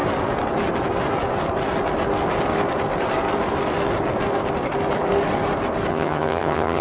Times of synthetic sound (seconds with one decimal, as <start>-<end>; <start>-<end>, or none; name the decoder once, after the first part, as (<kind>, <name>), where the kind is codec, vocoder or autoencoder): 5.9-6.8 (vocoder, HiFi-GAN)